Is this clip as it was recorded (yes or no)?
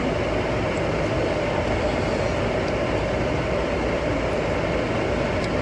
yes